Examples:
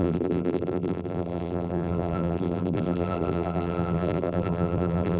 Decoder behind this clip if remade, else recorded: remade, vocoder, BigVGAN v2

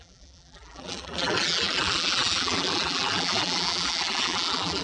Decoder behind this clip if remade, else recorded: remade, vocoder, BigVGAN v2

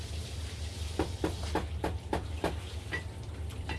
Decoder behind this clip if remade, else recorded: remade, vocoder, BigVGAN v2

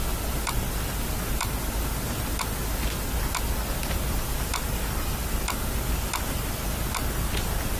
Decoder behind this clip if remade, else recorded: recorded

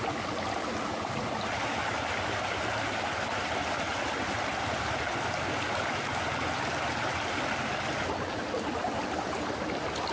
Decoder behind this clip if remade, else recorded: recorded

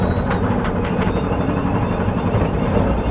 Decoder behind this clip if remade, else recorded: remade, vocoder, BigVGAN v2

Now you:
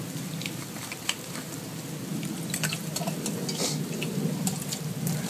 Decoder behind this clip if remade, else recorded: recorded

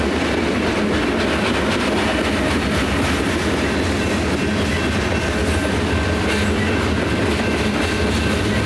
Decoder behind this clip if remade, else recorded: recorded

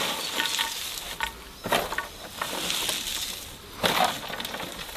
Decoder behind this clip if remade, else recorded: recorded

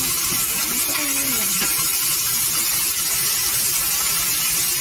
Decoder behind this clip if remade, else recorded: recorded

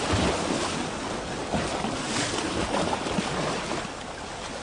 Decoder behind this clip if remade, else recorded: recorded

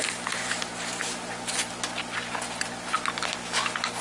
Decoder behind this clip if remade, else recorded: recorded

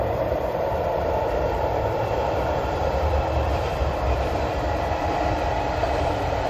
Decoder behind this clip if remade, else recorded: remade, vocoder, BigVGAN v2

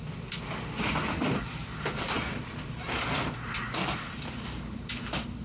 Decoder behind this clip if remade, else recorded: remade, vocoder, BigVGAN v2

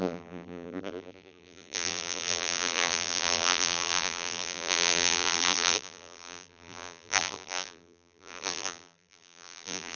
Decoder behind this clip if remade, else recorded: remade, vocoder, BigVGAN v2